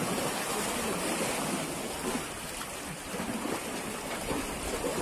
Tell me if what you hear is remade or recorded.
recorded